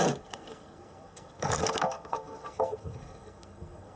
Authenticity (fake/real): fake